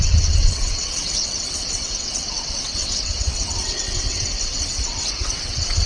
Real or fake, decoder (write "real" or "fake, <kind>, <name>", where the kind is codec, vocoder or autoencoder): fake, vocoder, WaveNeXt